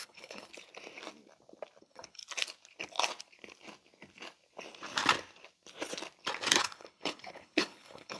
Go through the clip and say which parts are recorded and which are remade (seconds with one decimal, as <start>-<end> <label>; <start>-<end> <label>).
0.0-0.5 remade; 0.5-1.8 recorded; 1.8-2.2 remade; 2.2-6.6 recorded; 6.6-8.2 remade